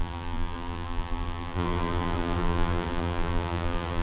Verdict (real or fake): fake